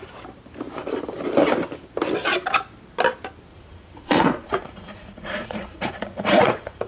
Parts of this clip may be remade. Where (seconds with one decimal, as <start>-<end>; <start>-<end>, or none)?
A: 3.5-6.9